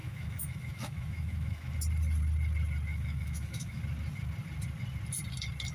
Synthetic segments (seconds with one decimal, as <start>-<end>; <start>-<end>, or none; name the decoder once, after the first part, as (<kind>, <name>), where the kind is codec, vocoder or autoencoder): 0.0-1.7 (autoencoder, DAC-VAE); 2.9-3.8